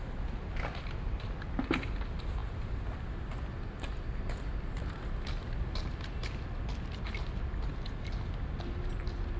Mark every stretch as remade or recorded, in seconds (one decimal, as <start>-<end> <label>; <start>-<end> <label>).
0.0-9.4 recorded